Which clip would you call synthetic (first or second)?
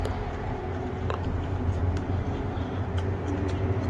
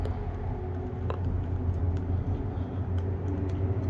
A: first